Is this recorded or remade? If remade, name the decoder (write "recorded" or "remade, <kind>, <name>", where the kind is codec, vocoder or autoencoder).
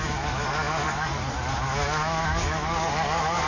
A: remade, codec, DAC